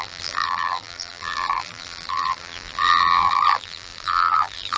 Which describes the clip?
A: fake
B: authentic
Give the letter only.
A